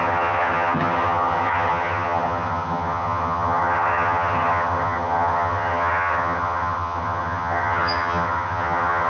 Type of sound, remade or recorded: remade